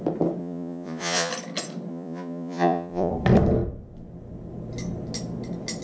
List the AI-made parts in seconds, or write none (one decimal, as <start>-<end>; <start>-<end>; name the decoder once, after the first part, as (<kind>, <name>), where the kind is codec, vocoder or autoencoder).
0.4-1.3 (vocoder, Vocos); 1.9-3.1

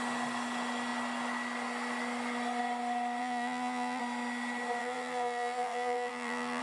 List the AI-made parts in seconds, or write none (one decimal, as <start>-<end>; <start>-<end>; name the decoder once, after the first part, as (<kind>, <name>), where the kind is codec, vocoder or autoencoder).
3.2-4.0 (vocoder, BigVGAN v2); 4.8-6.6